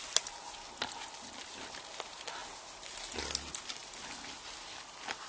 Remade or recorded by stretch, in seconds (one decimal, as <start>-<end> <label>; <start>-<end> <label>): 0.0-5.3 recorded

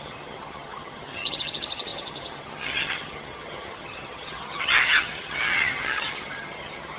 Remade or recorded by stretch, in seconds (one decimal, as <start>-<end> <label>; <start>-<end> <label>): 0.0-7.0 remade

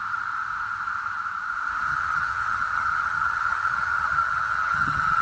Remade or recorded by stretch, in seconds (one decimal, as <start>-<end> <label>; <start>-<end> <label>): 0.0-1.9 recorded; 1.9-5.2 remade

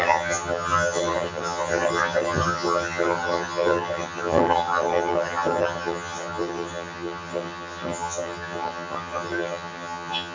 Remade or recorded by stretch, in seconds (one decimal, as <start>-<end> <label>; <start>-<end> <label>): 0.0-10.3 remade

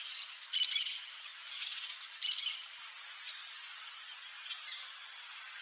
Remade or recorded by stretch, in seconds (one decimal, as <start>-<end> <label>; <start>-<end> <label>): 0.0-5.6 recorded

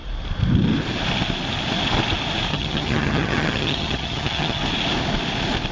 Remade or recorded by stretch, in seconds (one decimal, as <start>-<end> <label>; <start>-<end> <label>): 0.0-2.5 recorded; 2.5-4.6 remade; 4.6-5.7 recorded